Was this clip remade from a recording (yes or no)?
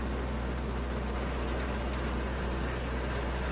no